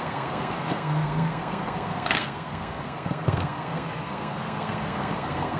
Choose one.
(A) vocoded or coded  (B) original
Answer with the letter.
A